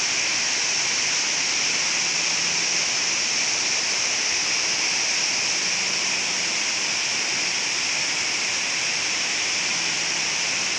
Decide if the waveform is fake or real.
real